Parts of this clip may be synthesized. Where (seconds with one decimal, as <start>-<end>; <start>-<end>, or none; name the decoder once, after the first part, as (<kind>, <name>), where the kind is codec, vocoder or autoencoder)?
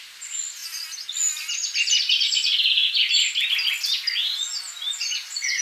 none